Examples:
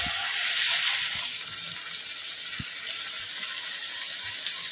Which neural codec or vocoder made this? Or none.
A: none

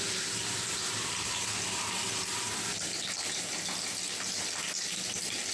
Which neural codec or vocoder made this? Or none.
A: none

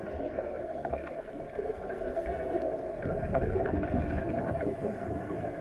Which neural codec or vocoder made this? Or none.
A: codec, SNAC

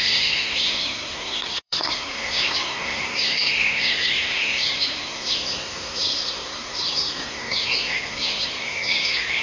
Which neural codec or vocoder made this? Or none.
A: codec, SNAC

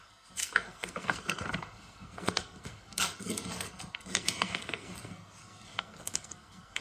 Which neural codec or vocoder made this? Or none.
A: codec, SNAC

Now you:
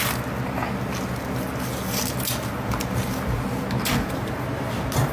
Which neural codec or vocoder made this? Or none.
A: none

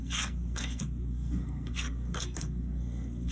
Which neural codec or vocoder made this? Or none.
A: codec, SNAC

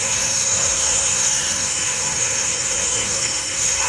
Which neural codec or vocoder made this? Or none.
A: codec, SNAC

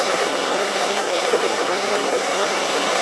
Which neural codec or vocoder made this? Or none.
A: codec, SNAC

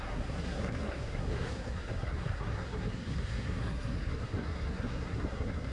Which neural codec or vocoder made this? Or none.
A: codec, SNAC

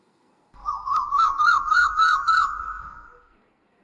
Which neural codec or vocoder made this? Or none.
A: codec, SNAC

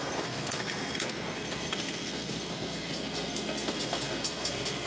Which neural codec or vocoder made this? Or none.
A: codec, SNAC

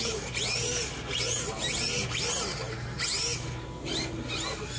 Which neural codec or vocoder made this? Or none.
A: none